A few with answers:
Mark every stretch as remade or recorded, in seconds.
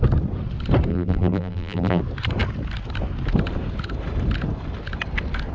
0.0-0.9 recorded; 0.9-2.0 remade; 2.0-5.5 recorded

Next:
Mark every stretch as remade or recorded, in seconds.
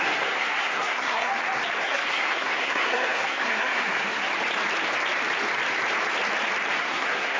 0.0-1.3 remade; 1.3-1.8 recorded; 1.8-4.2 remade; 4.2-6.8 recorded; 6.8-7.4 remade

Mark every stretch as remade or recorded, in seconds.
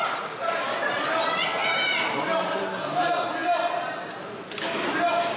0.0-5.4 recorded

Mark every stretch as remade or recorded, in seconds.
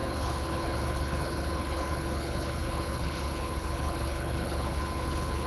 0.0-5.5 remade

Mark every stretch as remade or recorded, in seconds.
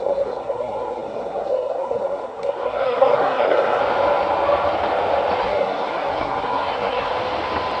0.0-3.8 remade; 3.8-5.4 recorded; 5.4-7.1 remade; 7.1-7.8 recorded